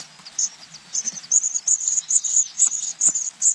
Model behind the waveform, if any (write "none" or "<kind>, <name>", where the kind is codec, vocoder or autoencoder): none